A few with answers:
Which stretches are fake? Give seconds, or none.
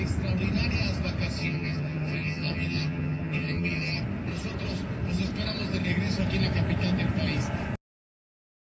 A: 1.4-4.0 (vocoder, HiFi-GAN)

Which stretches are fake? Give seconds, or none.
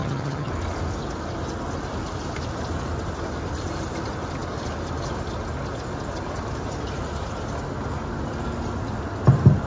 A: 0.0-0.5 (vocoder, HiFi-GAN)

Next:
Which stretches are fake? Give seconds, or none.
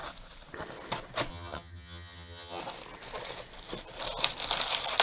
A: 1.3-2.6 (vocoder, HiFi-GAN)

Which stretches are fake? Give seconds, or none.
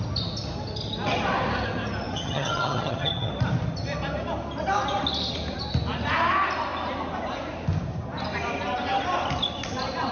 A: 2.1-3.3 (vocoder, HiFi-GAN)